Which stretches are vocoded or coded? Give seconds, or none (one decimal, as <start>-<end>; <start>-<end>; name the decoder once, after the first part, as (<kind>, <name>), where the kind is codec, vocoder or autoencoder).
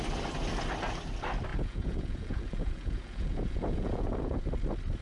1.5-4.5 (vocoder, Vocos)